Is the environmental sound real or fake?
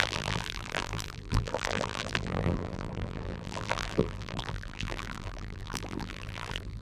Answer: fake